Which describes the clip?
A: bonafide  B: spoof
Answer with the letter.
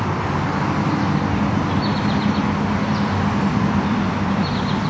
A